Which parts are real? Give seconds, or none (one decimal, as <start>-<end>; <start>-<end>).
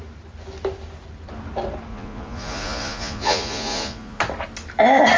0.0-1.9; 4.2-5.2